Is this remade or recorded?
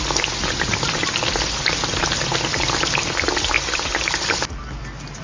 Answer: recorded